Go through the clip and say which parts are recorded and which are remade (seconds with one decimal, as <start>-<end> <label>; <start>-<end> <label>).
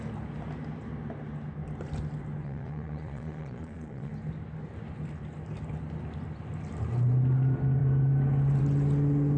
0.0-2.4 recorded; 2.4-4.1 remade; 4.1-9.4 recorded